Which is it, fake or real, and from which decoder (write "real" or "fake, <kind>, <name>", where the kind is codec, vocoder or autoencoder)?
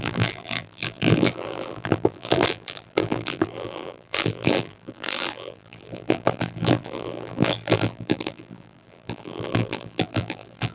fake, vocoder, BigVGAN v2